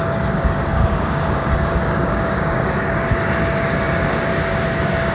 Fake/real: fake